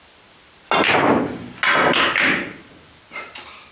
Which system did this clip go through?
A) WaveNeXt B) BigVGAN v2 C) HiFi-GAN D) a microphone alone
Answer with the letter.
D